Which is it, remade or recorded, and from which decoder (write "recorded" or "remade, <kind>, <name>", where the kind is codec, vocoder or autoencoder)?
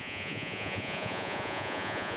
remade, vocoder, Vocos